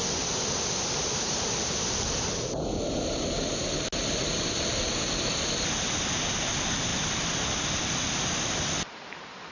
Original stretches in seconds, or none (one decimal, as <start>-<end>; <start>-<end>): 0.0-9.5